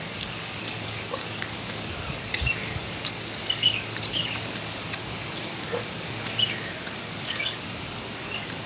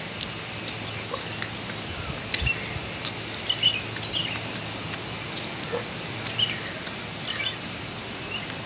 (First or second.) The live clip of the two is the second